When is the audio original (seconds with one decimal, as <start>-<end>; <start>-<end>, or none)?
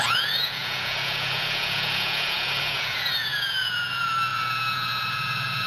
none